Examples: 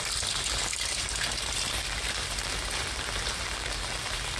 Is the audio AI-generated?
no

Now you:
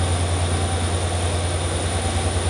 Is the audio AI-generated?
no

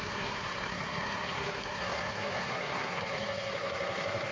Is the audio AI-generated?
yes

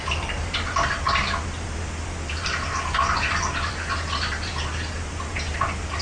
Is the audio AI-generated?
no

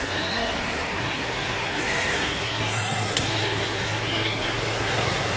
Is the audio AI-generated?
yes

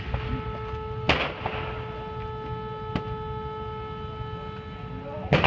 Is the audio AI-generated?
no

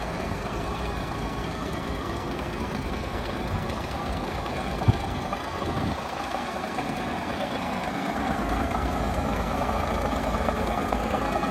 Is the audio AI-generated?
yes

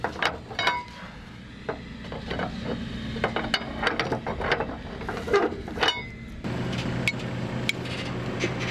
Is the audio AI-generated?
no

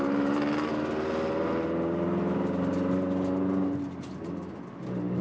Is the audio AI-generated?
no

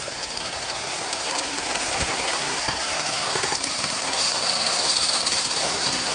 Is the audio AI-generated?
yes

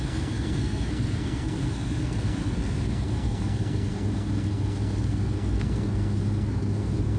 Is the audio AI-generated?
yes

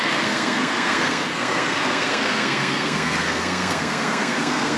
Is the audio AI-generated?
yes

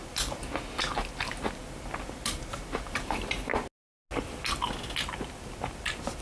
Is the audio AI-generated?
no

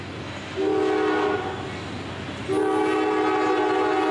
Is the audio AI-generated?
no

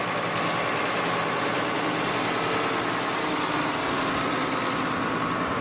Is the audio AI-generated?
no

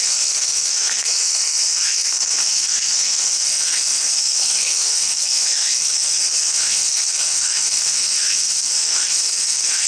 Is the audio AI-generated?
yes